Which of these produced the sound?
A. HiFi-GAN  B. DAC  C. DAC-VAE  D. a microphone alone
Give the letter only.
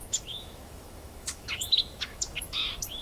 C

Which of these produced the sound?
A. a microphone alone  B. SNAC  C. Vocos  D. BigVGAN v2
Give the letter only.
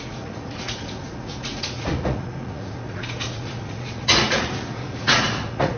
C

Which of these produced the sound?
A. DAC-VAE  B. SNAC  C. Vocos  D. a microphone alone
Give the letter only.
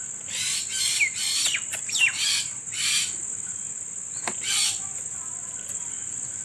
D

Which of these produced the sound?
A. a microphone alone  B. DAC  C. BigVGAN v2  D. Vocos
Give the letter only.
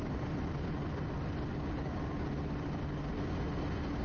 A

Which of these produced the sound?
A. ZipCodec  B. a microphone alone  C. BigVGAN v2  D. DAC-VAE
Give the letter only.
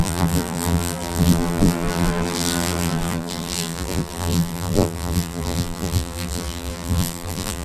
C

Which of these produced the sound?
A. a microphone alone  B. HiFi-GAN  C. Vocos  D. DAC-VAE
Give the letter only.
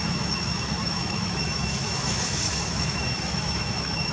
D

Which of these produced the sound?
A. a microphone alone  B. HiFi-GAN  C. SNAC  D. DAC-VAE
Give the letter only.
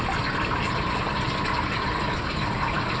A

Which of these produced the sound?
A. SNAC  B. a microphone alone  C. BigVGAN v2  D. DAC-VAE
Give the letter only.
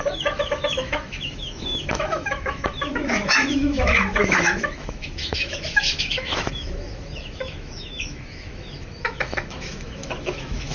D